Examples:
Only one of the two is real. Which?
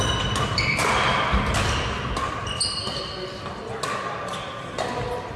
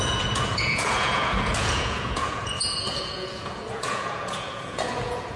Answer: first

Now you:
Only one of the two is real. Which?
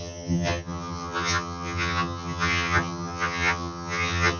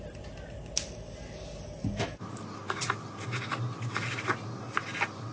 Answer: second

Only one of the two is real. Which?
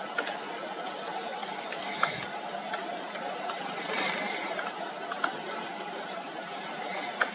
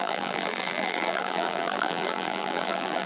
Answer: first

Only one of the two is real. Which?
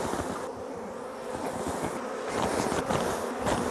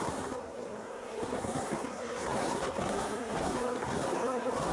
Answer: first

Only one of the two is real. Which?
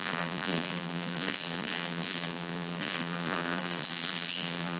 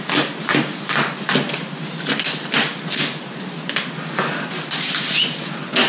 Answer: second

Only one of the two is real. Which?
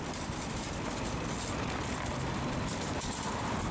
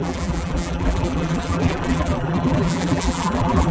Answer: first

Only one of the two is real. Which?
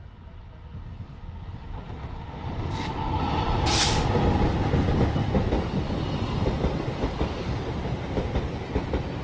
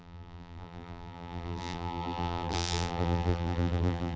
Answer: first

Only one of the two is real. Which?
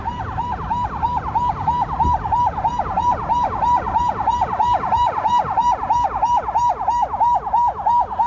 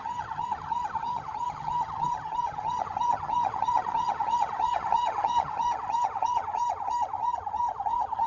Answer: first